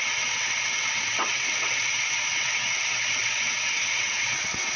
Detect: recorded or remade remade